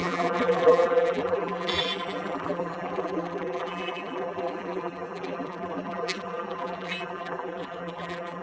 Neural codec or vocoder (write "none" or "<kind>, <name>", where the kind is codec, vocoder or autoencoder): vocoder, BigVGAN v2